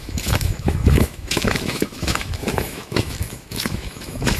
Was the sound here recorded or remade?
remade